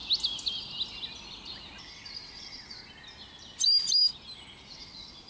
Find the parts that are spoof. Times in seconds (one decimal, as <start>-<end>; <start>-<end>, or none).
1.8-2.8; 4.7-5.3